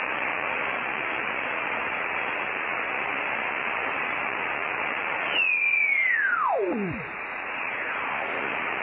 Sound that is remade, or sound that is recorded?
remade